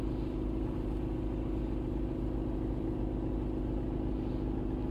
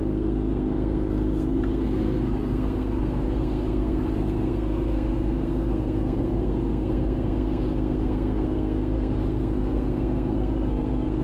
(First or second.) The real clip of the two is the first